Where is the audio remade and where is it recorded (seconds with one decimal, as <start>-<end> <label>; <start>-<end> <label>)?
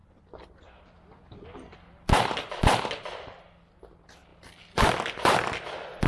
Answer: 0.0-6.1 recorded